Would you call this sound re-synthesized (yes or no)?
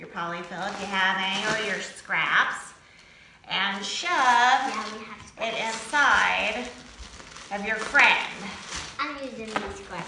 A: no